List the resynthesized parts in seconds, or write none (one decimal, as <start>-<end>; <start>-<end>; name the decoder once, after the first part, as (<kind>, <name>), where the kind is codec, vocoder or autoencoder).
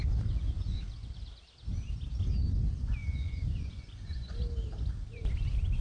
3.0-4.4 (vocoder, Vocos)